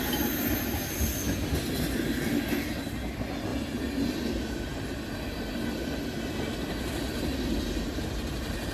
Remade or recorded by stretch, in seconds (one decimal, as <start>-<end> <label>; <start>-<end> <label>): 0.0-8.7 recorded